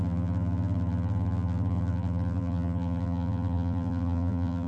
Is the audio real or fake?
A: fake